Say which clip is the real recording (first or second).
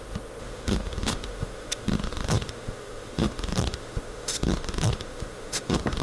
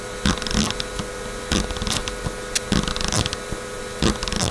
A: second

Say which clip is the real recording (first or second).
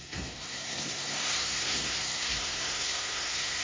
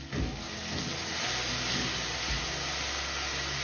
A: second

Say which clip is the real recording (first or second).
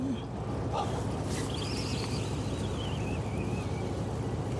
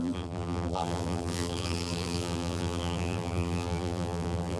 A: first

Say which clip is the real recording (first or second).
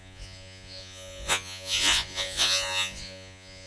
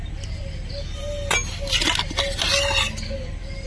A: second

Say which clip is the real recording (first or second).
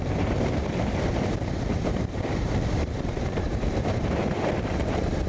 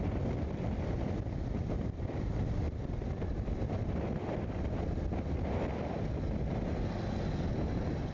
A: second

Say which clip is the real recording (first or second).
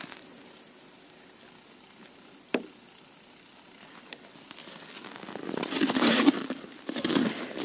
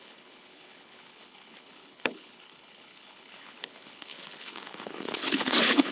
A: first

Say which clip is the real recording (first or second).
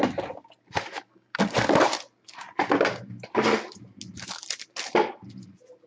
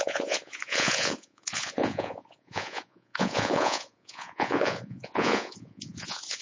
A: first